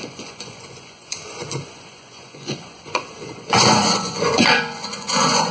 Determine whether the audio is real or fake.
fake